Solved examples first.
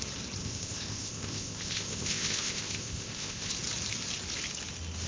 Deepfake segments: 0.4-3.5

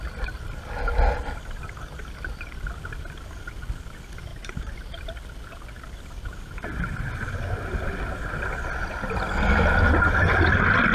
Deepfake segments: 4.3-4.9

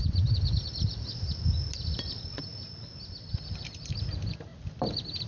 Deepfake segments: 0.0-2.5; 3.5-4.5

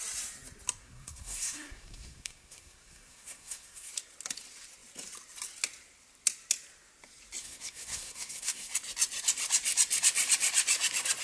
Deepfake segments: 0.8-3.9; 7.4-8.7